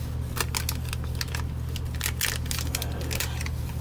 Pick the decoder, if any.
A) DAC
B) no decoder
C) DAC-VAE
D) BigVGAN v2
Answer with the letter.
B